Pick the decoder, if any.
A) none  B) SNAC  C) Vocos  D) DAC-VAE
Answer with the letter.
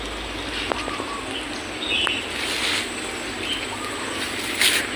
A